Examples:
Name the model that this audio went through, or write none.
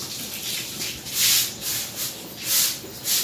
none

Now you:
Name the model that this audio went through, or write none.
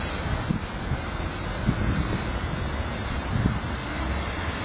none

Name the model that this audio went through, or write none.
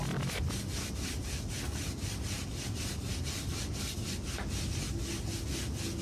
none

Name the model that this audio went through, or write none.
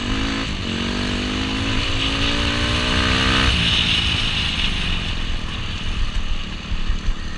none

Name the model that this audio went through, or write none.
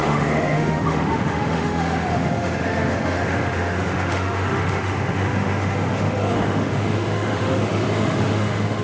autoencoder, DAC-VAE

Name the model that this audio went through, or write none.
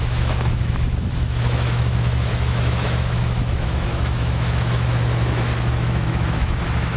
autoencoder, DAC-VAE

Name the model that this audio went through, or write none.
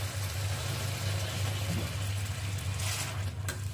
none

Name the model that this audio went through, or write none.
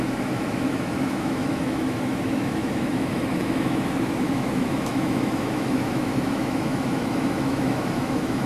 autoencoder, DAC-VAE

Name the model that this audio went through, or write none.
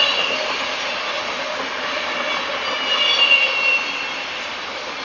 none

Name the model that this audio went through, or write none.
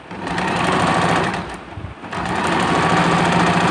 none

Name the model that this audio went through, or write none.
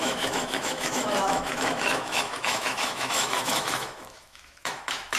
autoencoder, DAC-VAE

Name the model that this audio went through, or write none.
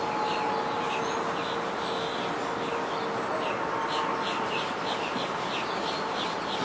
none